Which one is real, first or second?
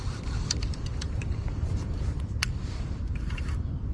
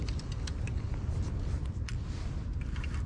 second